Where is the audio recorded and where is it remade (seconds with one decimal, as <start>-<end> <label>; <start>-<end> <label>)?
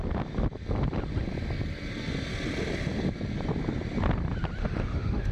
0.0-4.6 recorded; 4.6-5.3 remade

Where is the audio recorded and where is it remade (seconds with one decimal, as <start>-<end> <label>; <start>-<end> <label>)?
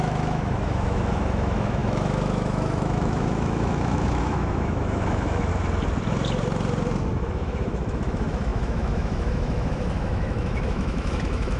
0.0-5.5 remade; 5.5-7.1 recorded; 7.1-11.6 remade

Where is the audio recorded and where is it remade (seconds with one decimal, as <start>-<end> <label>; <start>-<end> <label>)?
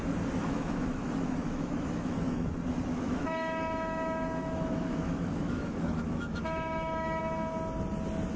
0.0-0.4 recorded; 0.4-2.5 remade; 2.5-2.9 recorded; 2.9-7.2 remade; 7.2-8.4 recorded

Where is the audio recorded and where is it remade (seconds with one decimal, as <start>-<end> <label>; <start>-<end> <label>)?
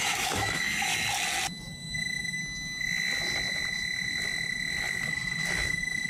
0.0-0.9 remade; 0.9-1.6 recorded; 1.6-2.4 remade; 2.4-5.4 recorded; 5.4-6.1 remade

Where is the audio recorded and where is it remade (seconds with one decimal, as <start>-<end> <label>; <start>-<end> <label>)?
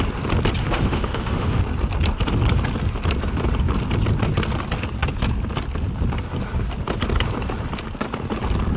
0.0-0.6 recorded; 0.6-1.6 remade; 1.6-8.8 recorded